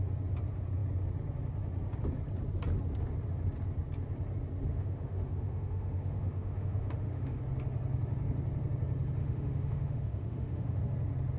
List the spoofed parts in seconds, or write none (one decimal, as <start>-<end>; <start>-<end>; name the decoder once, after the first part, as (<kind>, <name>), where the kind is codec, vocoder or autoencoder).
4.7-7.4 (autoencoder, DAC-VAE); 9.2-10.8